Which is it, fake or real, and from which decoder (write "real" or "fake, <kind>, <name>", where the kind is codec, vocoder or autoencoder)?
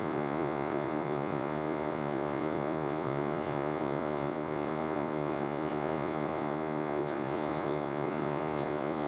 fake, vocoder, Vocos